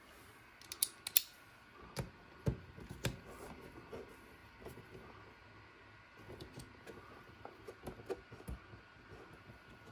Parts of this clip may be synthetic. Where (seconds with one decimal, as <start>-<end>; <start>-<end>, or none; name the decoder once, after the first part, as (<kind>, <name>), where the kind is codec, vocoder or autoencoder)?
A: none